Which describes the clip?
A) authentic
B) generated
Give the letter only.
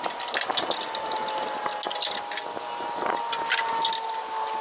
A